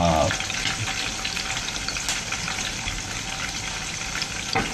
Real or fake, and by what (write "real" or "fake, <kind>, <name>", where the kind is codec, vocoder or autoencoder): real